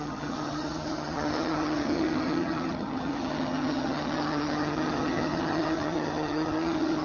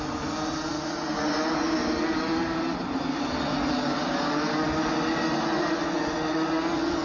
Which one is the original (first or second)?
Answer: second